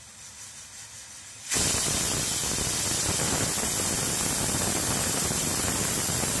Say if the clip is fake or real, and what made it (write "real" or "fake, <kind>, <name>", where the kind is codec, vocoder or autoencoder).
real